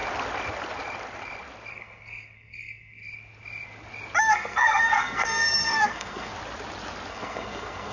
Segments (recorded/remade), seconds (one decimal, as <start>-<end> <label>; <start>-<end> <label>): 0.0-1.7 recorded; 1.7-3.0 remade; 3.0-4.2 recorded; 4.2-6.3 remade; 6.3-7.1 recorded; 7.1-7.9 remade